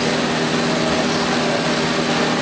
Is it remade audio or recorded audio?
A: recorded